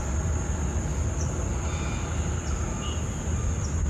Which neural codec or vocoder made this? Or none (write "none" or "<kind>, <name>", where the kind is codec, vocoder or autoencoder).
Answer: none